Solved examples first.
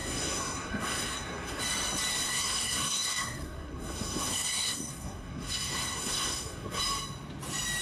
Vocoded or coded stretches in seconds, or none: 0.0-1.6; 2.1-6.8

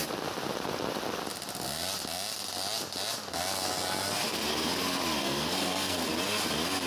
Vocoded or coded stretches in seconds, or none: 5.2-6.1

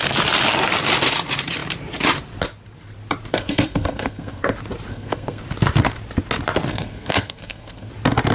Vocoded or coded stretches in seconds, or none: 3.3-4.5; 4.9-5.4; 6.7-7.9